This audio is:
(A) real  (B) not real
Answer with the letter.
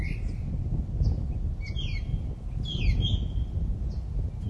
A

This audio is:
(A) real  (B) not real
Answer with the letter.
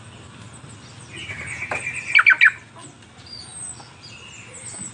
A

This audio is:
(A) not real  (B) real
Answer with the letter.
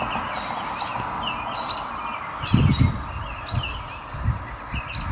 B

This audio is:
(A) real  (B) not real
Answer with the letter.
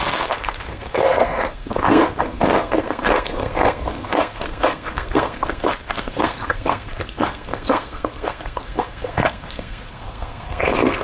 B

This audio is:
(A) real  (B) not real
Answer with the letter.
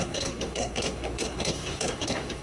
B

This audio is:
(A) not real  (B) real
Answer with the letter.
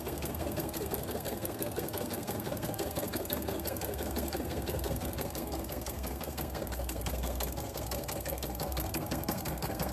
A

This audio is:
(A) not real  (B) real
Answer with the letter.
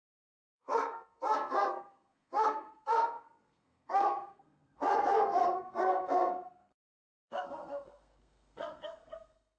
A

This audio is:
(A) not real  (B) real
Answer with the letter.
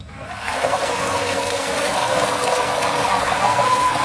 A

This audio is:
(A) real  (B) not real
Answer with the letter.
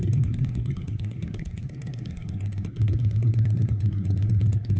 B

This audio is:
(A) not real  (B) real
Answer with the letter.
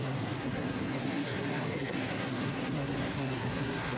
A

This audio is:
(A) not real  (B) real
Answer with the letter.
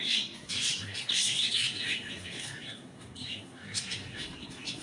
A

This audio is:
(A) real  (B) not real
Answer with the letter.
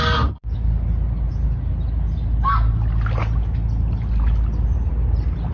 A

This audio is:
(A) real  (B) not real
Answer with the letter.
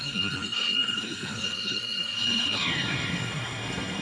B